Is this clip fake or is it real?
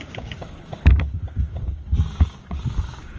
fake